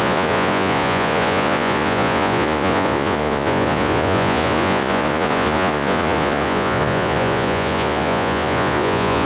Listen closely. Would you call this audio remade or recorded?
remade